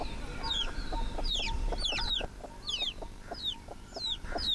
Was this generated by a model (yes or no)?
yes